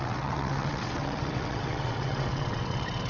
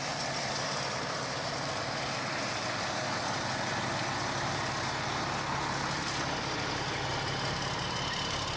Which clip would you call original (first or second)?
second